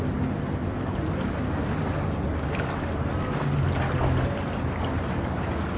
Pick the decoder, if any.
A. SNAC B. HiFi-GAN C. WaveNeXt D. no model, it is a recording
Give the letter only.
D